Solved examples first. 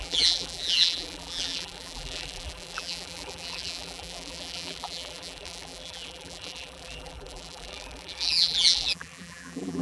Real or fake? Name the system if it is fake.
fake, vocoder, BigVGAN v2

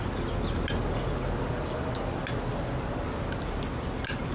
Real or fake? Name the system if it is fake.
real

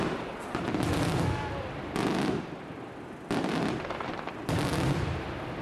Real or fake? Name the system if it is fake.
real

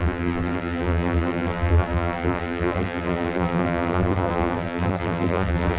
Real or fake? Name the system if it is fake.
fake, vocoder, BigVGAN v2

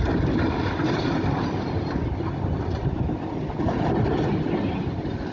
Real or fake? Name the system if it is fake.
fake, vocoder, BigVGAN v2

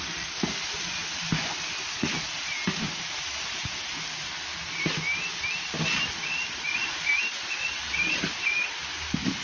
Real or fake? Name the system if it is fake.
real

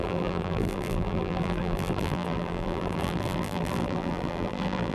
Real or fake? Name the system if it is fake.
fake, vocoder, BigVGAN v2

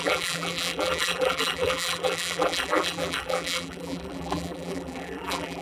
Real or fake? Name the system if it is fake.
fake, vocoder, BigVGAN v2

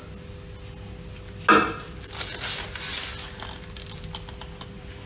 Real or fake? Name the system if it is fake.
real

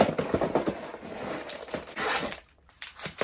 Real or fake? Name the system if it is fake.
fake, vocoder, BigVGAN v2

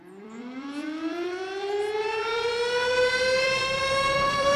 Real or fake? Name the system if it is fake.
fake, vocoder, BigVGAN v2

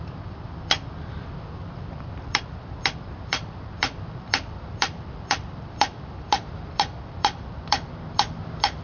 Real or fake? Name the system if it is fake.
fake, vocoder, BigVGAN v2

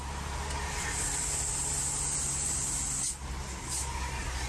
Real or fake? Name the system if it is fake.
real